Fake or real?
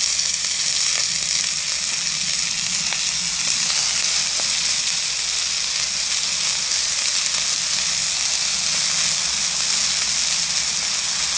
real